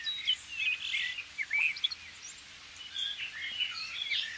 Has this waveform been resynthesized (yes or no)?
no